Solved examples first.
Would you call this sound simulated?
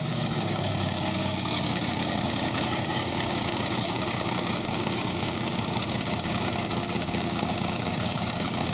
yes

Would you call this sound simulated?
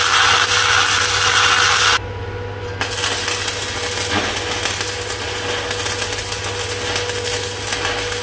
no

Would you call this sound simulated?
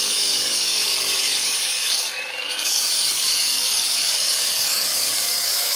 yes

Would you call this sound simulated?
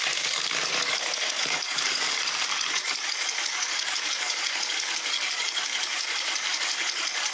yes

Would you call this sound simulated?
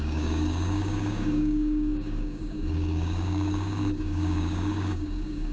yes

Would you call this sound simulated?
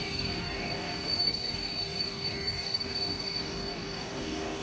yes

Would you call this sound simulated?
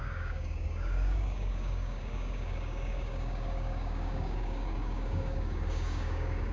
yes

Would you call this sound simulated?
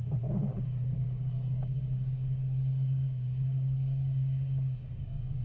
yes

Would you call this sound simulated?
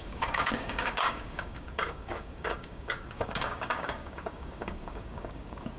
yes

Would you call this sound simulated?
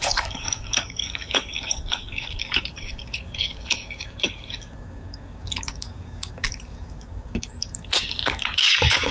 yes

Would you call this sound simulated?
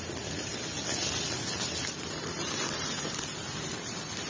no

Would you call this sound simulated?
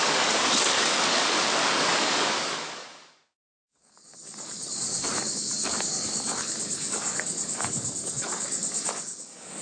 yes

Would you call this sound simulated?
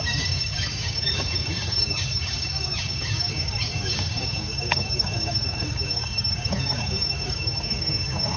yes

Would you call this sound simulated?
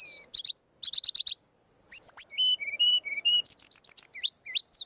no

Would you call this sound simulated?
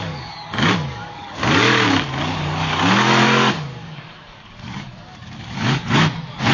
yes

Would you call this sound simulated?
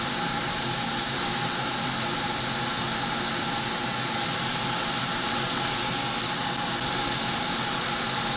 no